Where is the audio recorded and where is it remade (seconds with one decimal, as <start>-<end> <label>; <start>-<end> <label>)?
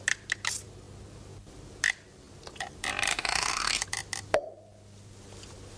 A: 0.0-3.1 recorded; 3.1-3.7 remade; 3.7-5.8 recorded